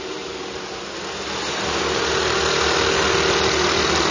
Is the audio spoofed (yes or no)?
no